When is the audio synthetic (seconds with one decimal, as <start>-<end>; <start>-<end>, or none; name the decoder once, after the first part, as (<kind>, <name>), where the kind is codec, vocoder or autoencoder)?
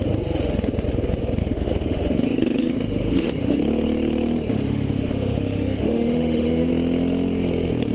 1.4-3.6 (autoencoder, DAC-VAE); 4.5-6.7